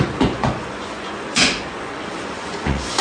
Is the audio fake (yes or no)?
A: yes